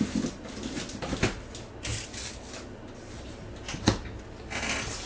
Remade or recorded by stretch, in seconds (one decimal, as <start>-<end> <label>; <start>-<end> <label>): 0.0-5.1 recorded